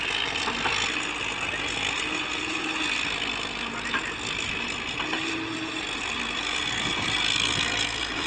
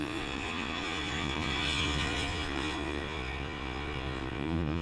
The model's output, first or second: second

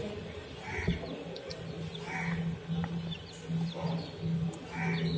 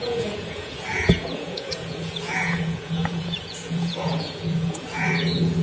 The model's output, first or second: second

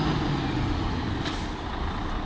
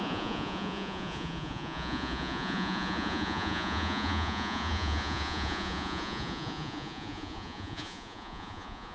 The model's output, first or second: second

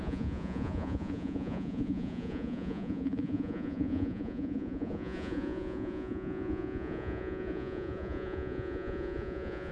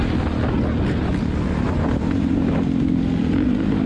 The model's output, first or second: first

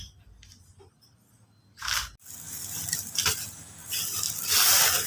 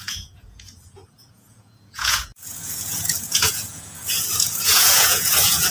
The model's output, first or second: second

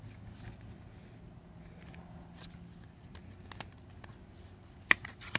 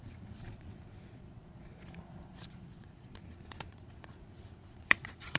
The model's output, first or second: second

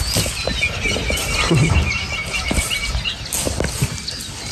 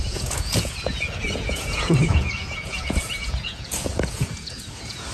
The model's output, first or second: second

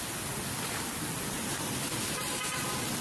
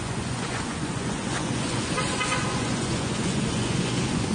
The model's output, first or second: second